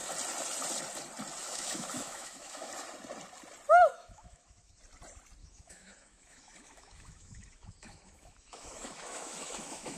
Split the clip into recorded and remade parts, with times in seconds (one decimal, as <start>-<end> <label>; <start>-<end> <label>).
0.0-1.4 recorded; 1.4-2.7 remade; 2.7-3.9 recorded; 3.9-4.8 remade; 4.8-5.4 recorded; 5.4-10.0 remade

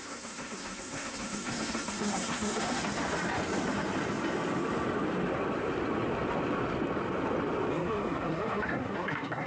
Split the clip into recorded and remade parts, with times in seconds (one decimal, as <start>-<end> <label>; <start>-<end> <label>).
0.0-2.8 remade; 2.8-7.7 recorded; 7.7-9.5 remade

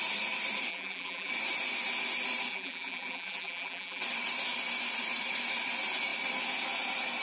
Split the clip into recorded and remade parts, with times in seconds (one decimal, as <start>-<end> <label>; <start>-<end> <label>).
0.0-0.7 recorded; 0.7-1.3 remade; 1.3-2.5 recorded; 2.5-4.0 remade; 4.0-7.2 recorded

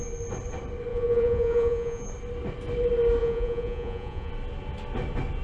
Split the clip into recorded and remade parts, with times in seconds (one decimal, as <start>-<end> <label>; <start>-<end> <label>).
0.0-0.9 recorded; 0.9-2.1 remade; 2.1-3.2 recorded; 3.2-4.3 remade; 4.3-5.4 recorded

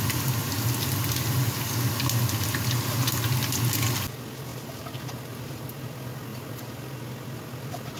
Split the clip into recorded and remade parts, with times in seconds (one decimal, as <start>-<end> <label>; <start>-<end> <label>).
0.0-4.5 recorded; 4.5-5.6 remade; 5.6-6.3 recorded; 6.3-6.9 remade; 6.9-8.0 recorded

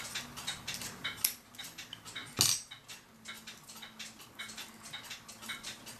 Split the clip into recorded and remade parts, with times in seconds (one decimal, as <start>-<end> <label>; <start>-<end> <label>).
0.0-6.0 recorded

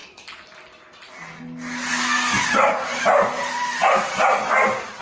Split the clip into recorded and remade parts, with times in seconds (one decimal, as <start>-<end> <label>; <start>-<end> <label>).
0.0-5.0 recorded